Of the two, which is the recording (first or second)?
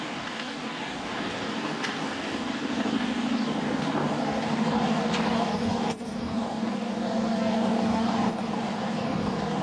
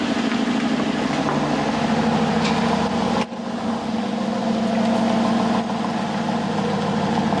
second